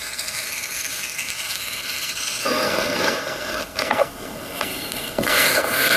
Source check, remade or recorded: remade